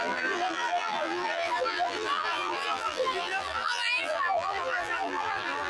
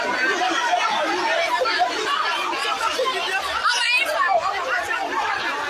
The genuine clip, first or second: second